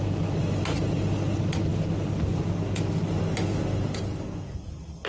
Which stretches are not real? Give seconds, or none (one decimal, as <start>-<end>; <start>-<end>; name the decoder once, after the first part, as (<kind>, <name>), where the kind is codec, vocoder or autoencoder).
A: none